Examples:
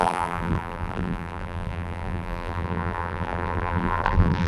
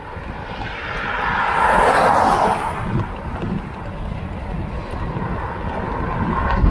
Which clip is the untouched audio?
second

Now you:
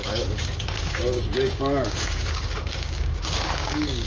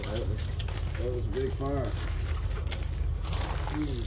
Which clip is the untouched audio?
second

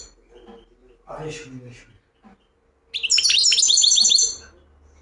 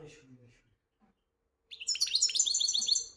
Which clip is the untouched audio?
first